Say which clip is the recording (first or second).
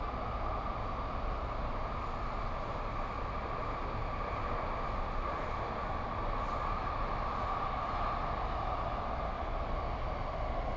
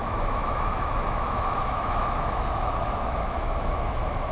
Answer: first